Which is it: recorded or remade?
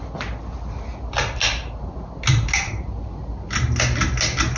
recorded